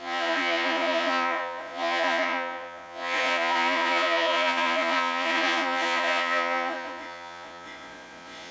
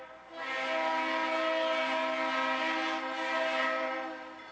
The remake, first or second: first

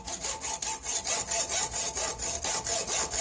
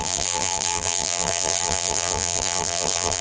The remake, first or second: second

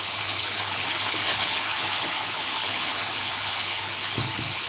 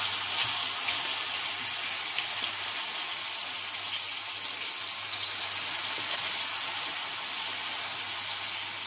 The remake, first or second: first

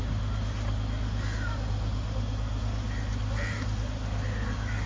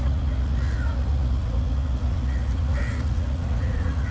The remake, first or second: second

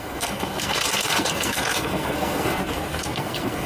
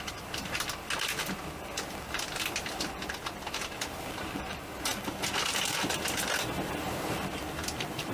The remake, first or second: first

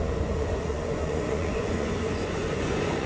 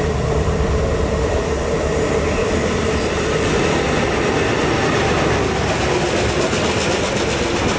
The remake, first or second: first